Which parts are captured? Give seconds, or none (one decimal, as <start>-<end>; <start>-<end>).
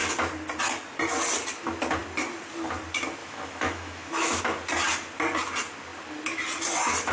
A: 0.0-3.2; 4.4-7.1